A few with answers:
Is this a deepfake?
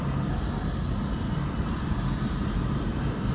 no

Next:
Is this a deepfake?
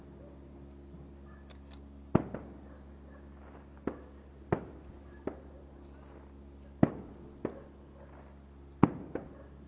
no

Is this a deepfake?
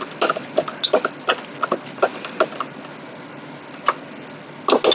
no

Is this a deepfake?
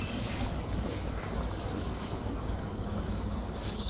yes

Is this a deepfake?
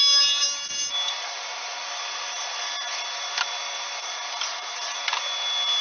no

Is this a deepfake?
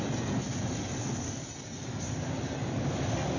no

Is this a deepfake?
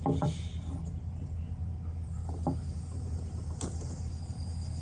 no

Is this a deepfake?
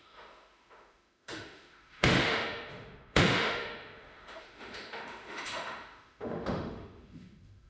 yes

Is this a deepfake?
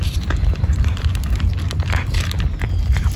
no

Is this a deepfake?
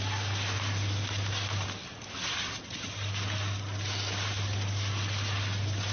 no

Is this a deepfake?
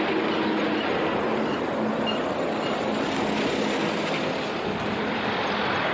no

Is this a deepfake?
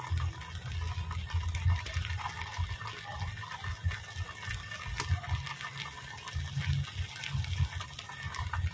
no